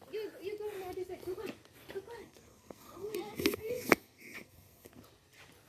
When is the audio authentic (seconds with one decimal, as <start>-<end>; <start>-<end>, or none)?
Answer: 0.0-2.2; 5.0-5.7